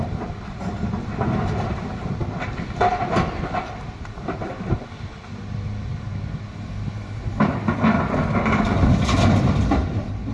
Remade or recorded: recorded